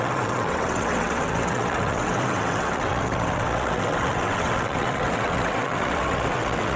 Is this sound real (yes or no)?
no